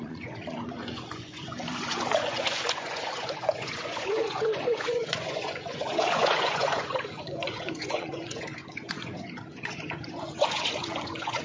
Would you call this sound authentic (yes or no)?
no